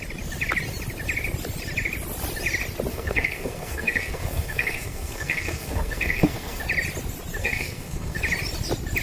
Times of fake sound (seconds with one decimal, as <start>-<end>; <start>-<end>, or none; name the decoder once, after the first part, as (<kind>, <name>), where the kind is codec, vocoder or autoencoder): 2.9-6.6 (codec, SNAC); 7.4-8.2